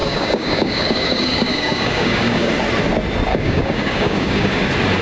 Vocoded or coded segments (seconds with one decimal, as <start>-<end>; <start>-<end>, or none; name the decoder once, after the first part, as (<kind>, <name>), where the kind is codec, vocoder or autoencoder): 0.0-2.5 (codec, DAC); 3.3-4.6